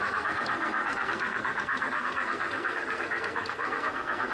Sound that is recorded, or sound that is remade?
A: remade